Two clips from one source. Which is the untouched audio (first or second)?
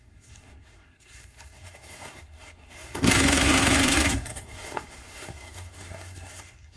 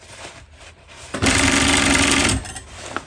second